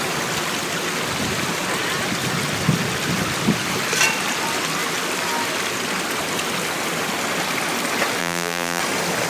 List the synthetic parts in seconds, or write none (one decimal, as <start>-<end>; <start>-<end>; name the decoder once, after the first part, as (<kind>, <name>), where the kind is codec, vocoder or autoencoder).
8.2-8.8 (vocoder, BigVGAN v2)